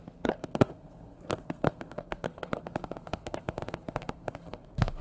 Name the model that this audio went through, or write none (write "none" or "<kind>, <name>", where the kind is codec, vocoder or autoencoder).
codec, SNAC